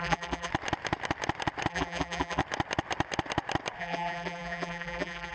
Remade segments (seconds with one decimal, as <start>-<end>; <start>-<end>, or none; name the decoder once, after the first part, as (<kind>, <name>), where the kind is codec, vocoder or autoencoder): 0.0-0.5 (vocoder, BigVGAN v2); 1.7-2.4; 3.8-5.3